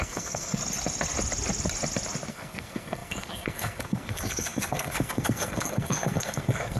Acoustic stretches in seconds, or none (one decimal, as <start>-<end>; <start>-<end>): 0.6-2.3